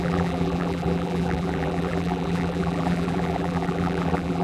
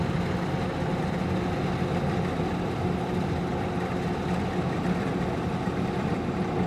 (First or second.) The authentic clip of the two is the second